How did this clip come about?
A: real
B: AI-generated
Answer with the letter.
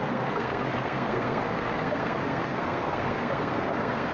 B